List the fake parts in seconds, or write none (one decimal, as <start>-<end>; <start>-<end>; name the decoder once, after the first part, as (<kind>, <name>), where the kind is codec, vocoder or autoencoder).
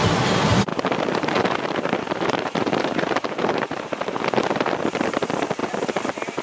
0.7-4.2 (vocoder, BigVGAN v2)